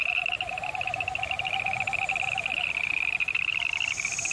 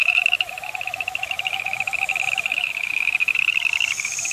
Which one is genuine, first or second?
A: first